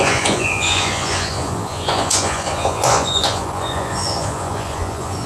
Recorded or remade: remade